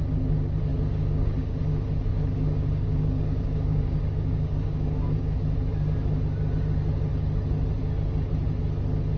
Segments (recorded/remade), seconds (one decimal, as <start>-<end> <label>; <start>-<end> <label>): 0.0-0.7 recorded; 0.7-1.6 remade; 1.6-2.1 recorded; 2.1-5.4 remade; 5.4-9.2 recorded